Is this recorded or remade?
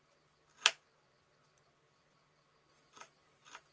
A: recorded